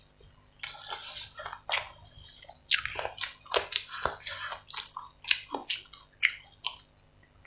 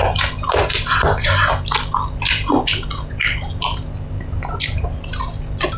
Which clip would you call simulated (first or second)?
second